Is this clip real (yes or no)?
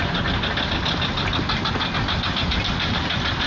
yes